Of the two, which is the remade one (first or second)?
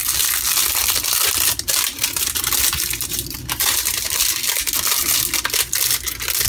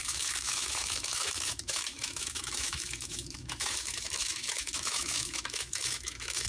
second